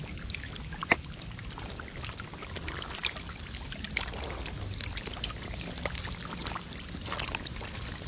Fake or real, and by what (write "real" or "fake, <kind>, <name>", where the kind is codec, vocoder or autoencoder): real